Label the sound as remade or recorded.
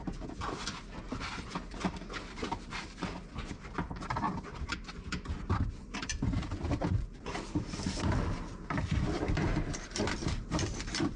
remade